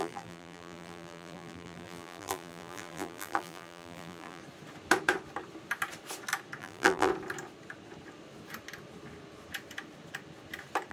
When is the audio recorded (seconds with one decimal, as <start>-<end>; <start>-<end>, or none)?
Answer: 4.4-6.6; 7.1-10.9